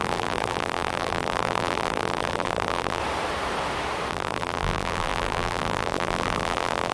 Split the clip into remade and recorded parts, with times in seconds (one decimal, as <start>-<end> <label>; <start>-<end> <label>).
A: 0.0-3.0 remade; 3.0-4.1 recorded; 4.1-6.9 remade

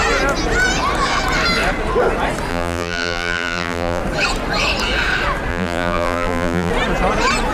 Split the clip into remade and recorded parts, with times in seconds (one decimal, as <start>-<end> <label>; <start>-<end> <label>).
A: 0.0-2.5 recorded; 2.5-4.0 remade; 4.0-5.5 recorded; 5.5-6.7 remade; 6.7-7.5 recorded